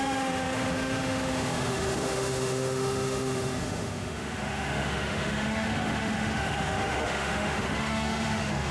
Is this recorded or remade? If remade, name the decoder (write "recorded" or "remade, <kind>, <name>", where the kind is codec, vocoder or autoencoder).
remade, autoencoder, DAC-VAE